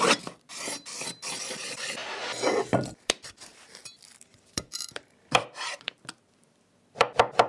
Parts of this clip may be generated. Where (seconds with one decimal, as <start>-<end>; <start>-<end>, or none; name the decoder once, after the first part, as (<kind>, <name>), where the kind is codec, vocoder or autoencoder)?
0.0-2.0 (vocoder, BigVGAN v2); 3.0-7.5